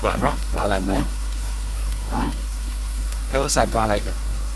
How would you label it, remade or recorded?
remade